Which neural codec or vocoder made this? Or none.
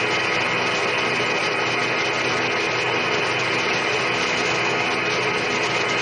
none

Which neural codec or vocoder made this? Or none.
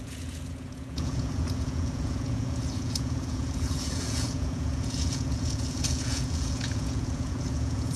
vocoder, Vocos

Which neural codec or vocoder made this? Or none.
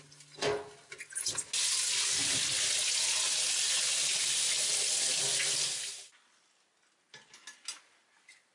none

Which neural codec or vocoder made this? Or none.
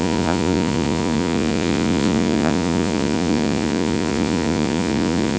vocoder, Vocos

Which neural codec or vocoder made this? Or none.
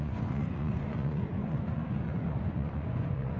vocoder, Vocos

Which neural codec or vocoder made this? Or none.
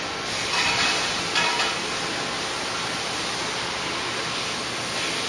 none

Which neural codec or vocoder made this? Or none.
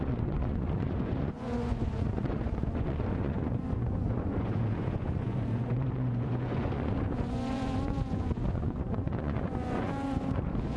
vocoder, Vocos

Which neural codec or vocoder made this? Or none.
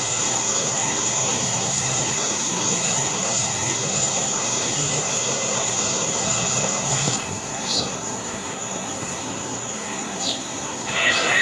codec, SNAC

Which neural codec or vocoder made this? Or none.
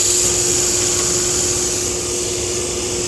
none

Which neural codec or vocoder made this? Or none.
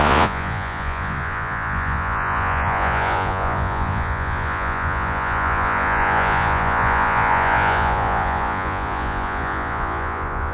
vocoder, Vocos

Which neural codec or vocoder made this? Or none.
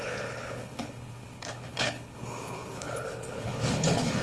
codec, HILCodec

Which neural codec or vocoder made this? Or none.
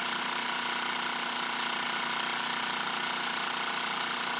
none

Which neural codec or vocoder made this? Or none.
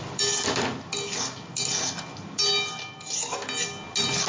none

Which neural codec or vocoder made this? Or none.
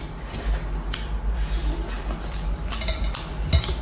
none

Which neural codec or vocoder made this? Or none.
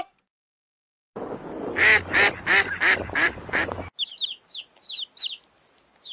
none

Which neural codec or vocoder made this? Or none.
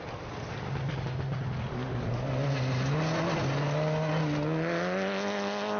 none